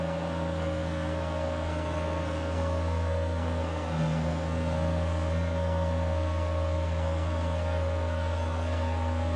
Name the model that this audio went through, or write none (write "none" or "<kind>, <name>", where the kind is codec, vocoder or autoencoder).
codec, SNAC